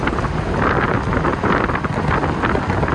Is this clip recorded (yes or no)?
yes